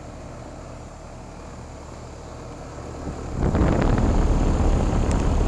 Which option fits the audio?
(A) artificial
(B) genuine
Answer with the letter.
B